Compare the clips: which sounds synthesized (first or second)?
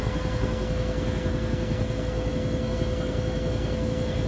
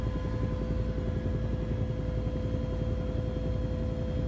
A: first